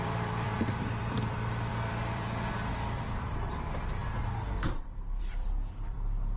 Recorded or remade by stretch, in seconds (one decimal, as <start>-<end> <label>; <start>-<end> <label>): 0.0-4.0 remade; 4.0-5.2 recorded; 5.2-6.4 remade